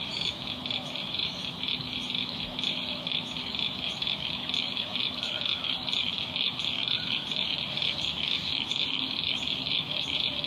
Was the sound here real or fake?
fake